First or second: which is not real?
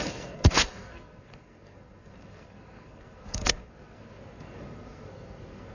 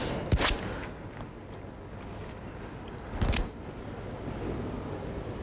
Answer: first